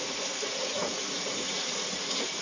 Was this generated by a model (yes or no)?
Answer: yes